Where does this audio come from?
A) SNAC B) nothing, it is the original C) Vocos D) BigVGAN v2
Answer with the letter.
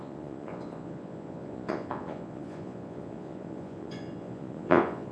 C